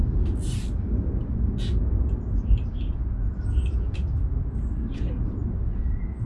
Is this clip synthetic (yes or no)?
no